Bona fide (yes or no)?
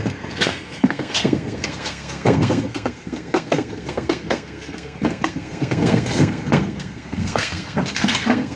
no